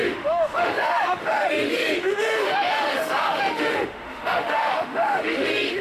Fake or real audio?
fake